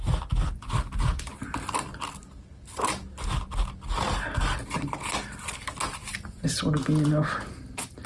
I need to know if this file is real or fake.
real